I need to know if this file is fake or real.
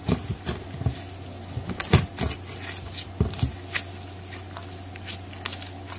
real